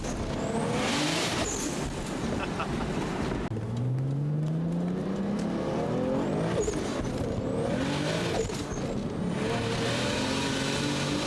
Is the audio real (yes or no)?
yes